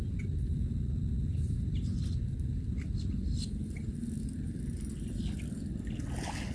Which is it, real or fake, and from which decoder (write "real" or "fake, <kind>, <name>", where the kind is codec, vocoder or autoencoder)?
real